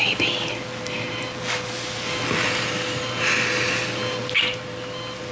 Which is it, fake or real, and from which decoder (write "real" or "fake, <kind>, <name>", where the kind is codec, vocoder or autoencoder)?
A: real